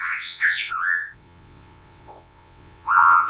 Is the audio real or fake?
fake